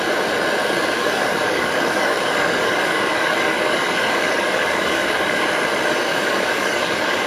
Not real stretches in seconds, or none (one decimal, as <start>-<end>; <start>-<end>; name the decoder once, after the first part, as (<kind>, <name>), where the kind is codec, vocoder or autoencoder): 1.0-5.4 (codec, DAC); 6.1-7.3